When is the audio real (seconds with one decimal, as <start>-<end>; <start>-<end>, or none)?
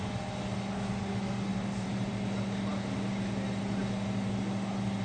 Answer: 0.0-1.5; 2.1-5.0